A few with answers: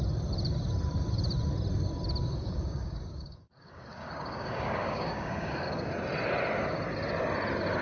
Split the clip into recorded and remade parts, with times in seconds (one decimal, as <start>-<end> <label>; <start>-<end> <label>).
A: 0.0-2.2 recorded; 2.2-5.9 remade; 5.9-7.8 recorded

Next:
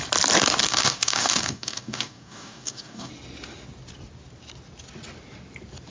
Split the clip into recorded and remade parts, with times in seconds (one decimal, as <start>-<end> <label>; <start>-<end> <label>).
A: 0.0-0.6 recorded; 0.6-3.1 remade; 3.1-5.9 recorded

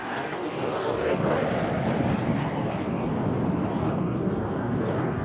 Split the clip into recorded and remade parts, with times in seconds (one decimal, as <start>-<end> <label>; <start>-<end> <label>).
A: 0.0-1.4 remade; 1.4-2.1 recorded; 2.1-3.1 remade; 3.1-3.7 recorded; 3.7-5.2 remade

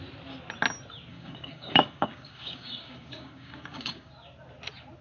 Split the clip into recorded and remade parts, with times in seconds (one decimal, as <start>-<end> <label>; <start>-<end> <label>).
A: 0.0-1.1 recorded; 1.1-4.1 remade; 4.1-5.0 recorded

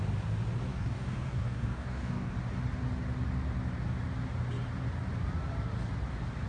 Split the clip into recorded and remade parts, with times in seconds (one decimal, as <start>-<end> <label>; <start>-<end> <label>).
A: 0.0-0.7 recorded; 0.7-2.3 remade; 2.3-6.5 recorded

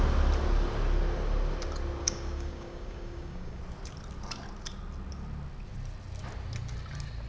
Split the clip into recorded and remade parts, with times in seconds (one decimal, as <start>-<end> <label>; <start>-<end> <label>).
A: 0.0-2.0 recorded; 2.0-3.6 remade; 3.6-7.3 recorded

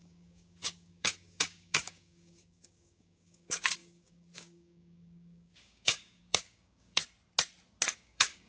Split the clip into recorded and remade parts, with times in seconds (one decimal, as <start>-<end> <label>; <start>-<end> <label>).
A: 0.0-7.0 remade; 7.0-7.9 recorded; 7.9-8.5 remade

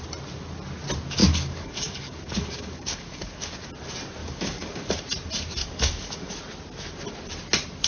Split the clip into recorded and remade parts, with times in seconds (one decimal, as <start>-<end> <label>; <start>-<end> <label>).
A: 0.0-1.2 recorded; 1.2-3.7 remade; 3.7-4.2 recorded; 4.2-4.9 remade; 4.9-5.6 recorded; 5.6-6.4 remade; 6.4-7.9 recorded